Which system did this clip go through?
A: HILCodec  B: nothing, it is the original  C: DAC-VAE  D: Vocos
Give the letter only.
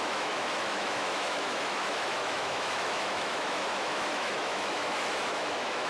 C